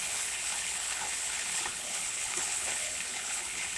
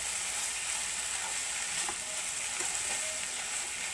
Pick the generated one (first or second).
first